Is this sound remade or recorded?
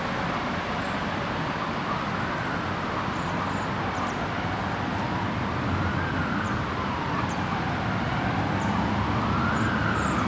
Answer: recorded